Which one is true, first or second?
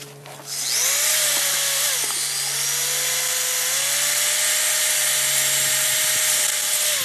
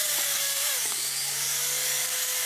first